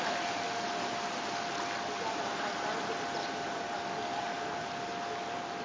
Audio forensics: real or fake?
real